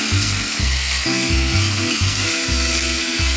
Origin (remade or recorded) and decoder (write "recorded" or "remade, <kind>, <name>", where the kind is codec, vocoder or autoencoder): remade, codec, SNAC